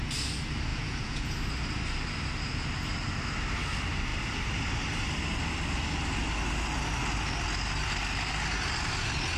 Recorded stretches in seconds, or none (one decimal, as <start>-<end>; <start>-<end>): 0.0-0.7; 1.3-9.4